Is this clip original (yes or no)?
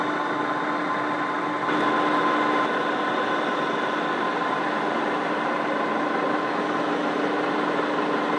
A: yes